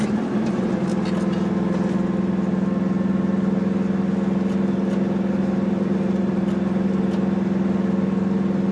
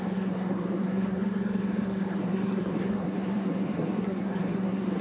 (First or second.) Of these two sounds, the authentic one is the first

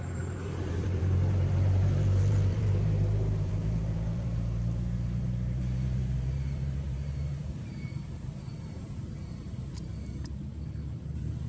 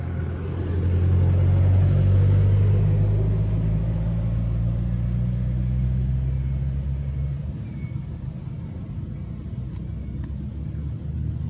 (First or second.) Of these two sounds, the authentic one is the second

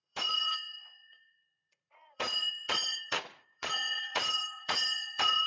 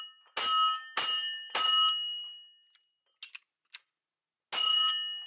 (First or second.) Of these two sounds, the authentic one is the second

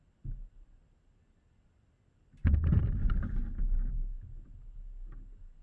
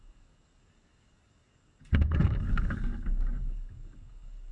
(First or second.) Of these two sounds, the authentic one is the first